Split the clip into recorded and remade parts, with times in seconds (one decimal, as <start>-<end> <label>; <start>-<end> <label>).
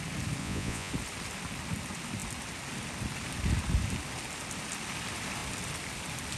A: 0.0-0.4 recorded; 0.4-0.9 remade; 0.9-6.4 recorded